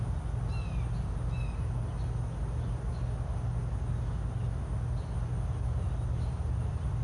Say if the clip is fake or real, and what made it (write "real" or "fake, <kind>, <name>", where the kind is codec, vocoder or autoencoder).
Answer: real